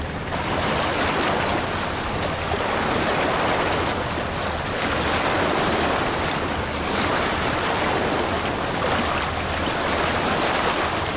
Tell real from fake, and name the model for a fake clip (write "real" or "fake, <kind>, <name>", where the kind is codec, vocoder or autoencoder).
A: real